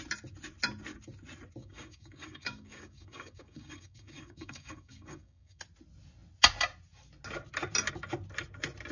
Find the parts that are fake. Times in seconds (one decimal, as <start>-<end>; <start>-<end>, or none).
1.6-5.6